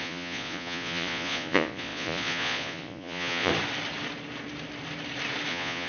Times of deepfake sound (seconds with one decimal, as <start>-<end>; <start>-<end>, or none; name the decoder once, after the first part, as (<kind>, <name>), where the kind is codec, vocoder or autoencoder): 0.0-3.5 (vocoder, Vocos); 5.5-5.9